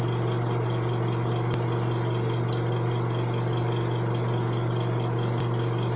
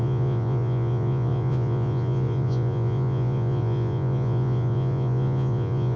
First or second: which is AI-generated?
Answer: second